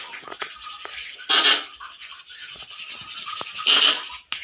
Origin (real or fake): real